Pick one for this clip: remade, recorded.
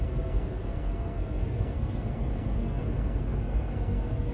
remade